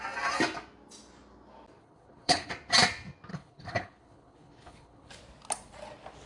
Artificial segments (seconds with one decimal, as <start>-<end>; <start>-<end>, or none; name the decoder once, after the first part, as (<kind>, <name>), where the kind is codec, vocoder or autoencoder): 1.8-2.5 (codec, HILCodec); 3.3-5.1

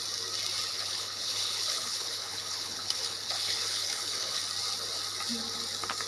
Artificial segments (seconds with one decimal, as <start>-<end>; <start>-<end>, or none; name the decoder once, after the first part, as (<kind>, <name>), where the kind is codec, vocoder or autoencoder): 0.7-4.4 (codec, HILCodec)

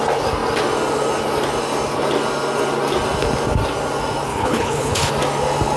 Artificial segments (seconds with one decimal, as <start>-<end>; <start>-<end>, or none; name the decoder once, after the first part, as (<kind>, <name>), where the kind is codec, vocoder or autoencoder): 4.3-5.1 (codec, HILCodec)